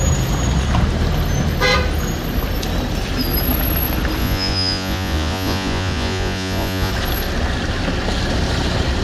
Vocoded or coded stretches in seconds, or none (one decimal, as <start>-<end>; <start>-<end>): 4.2-6.9